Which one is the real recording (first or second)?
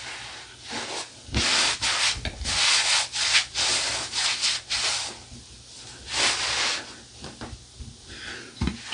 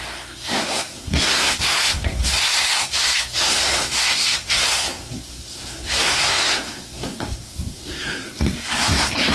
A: first